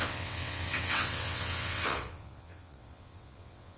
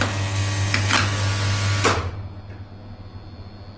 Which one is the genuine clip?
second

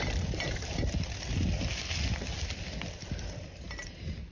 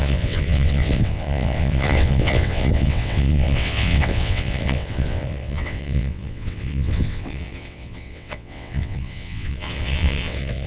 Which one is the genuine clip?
first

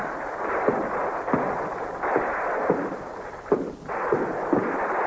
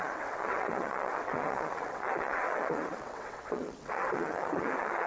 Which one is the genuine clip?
first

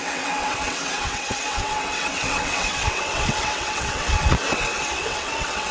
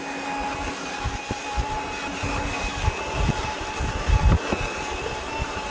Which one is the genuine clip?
second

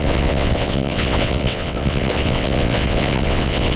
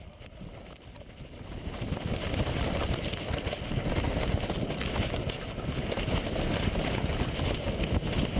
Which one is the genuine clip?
second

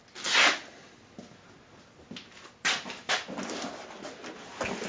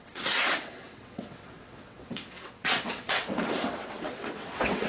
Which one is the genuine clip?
first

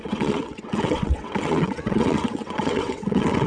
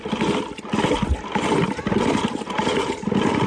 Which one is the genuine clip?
second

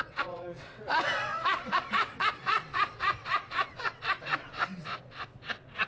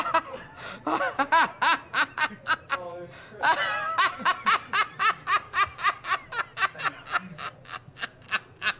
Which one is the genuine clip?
second